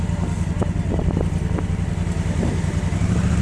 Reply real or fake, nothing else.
real